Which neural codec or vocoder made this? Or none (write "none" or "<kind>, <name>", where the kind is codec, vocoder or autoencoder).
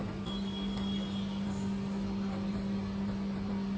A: none